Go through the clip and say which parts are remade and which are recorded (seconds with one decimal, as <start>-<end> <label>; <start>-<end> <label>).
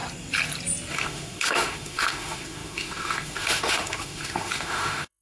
0.0-0.9 recorded; 0.9-5.2 remade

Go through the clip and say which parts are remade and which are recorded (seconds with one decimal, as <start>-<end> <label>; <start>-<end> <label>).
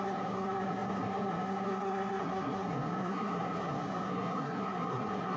0.0-5.4 remade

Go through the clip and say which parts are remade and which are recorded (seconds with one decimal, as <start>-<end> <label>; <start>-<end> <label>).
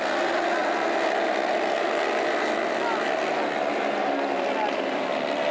0.0-5.5 recorded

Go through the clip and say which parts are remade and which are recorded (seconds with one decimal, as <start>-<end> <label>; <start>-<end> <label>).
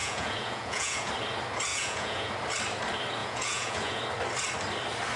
0.0-1.1 remade; 1.1-1.7 recorded; 1.7-2.3 remade; 2.3-3.2 recorded; 3.2-4.0 remade; 4.0-5.2 recorded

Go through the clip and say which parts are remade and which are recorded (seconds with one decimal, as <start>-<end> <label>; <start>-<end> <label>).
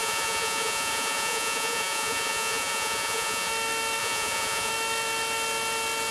0.0-3.5 remade; 3.5-4.0 recorded; 4.0-4.7 remade; 4.7-6.1 recorded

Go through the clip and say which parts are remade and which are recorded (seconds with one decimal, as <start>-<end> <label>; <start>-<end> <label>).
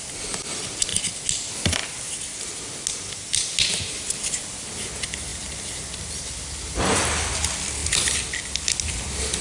0.0-9.4 recorded